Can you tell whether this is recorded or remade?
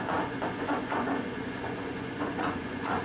remade